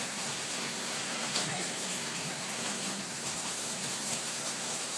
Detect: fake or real fake